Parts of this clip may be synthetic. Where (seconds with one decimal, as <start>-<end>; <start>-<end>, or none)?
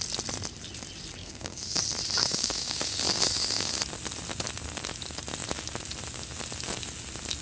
1.2-1.8; 2.2-3.8